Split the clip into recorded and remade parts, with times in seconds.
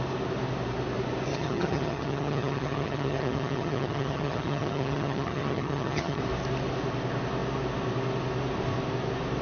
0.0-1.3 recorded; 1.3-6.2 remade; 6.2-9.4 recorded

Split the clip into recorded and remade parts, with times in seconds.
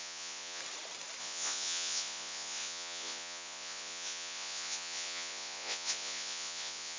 0.0-0.6 remade; 0.6-1.2 recorded; 1.2-7.0 remade